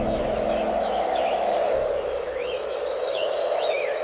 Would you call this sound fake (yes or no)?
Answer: yes